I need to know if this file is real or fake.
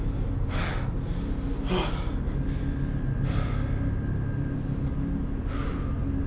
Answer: real